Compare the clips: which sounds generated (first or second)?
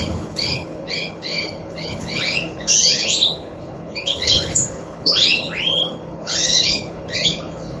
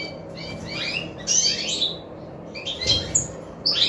first